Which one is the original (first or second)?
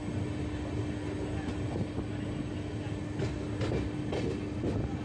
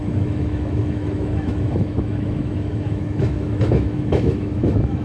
first